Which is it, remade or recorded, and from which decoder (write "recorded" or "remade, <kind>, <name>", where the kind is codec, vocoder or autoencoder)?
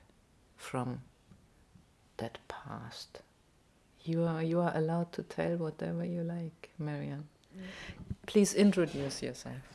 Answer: recorded